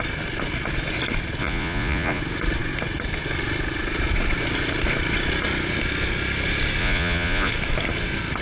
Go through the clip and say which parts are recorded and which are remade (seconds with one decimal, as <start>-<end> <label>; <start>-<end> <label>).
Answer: 0.0-1.4 recorded; 1.4-2.2 remade; 2.2-6.8 recorded; 6.8-7.5 remade; 7.5-8.4 recorded